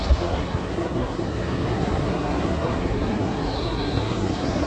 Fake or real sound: fake